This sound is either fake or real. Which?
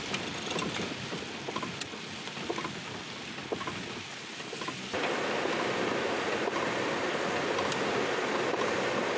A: real